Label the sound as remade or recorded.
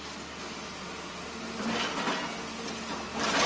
recorded